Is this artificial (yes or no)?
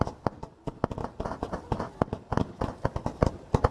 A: no